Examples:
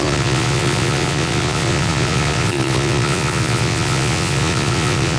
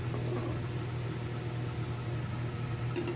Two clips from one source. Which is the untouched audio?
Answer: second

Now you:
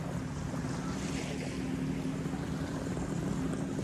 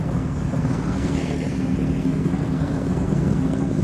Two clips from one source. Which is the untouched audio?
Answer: first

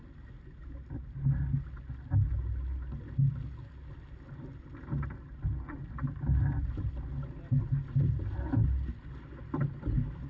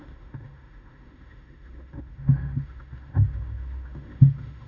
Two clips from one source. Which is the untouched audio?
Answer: first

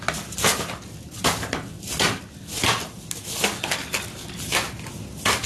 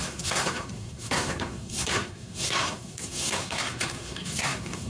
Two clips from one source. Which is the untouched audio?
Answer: first